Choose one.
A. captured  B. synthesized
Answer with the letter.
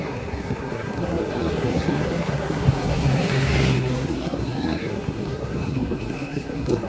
B